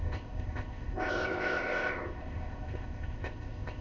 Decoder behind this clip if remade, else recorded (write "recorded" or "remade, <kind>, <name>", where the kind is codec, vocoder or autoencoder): remade, codec, ZipCodec